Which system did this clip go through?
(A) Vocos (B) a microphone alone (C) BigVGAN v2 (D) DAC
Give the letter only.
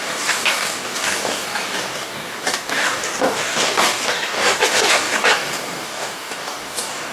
D